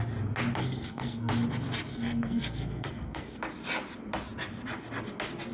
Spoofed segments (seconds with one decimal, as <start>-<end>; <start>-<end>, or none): 0.6-1.3; 1.9-3.4